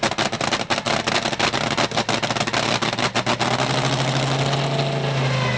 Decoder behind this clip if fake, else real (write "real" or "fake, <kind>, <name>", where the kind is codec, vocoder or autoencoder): real